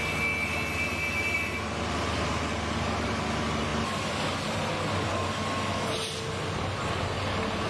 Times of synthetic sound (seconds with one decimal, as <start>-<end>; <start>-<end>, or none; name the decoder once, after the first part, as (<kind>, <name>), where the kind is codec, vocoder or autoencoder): none